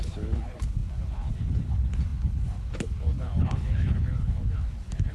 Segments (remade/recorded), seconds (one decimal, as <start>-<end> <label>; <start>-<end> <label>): 0.0-5.1 remade